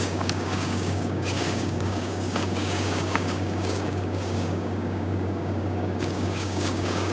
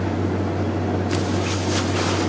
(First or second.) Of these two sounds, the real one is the second